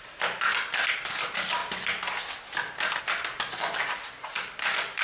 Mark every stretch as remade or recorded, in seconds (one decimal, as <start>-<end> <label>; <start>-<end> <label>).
0.0-5.0 recorded